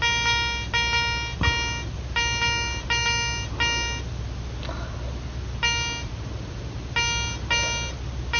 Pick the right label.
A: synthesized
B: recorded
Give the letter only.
B